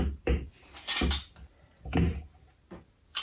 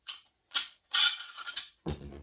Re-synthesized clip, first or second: second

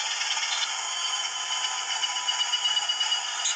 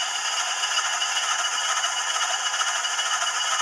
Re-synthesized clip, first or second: second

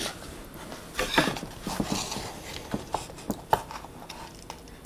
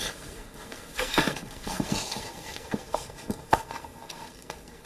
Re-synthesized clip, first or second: second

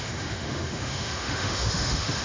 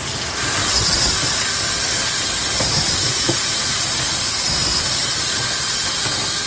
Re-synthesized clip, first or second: first